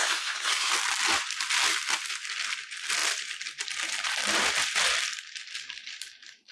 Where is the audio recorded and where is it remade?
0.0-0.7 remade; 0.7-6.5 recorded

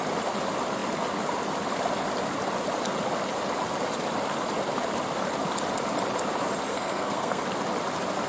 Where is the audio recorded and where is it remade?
0.0-6.7 recorded; 6.7-7.4 remade; 7.4-8.3 recorded

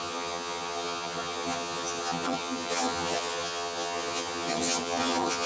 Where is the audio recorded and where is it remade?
0.0-5.5 remade

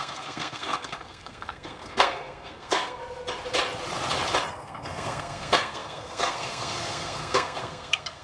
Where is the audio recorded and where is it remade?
0.0-3.0 remade; 3.0-4.5 recorded; 4.5-8.2 remade

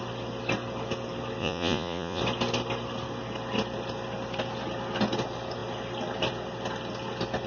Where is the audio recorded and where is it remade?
0.0-1.4 recorded; 1.4-2.2 remade; 2.2-7.5 recorded

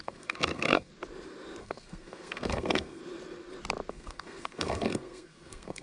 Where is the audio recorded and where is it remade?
0.0-0.9 remade; 0.9-1.6 recorded; 1.6-3.0 remade; 3.0-3.9 recorded; 3.9-5.8 remade

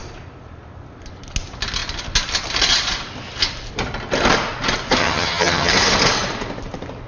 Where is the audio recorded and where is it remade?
0.0-5.0 recorded; 5.0-5.7 remade; 5.7-7.1 recorded